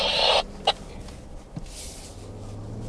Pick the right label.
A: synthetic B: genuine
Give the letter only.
B